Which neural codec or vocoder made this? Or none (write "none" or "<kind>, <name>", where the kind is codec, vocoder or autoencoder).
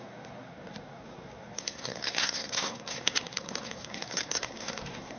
codec, SNAC